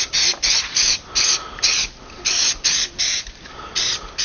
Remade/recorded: recorded